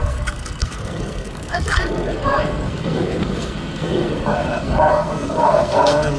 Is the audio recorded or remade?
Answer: remade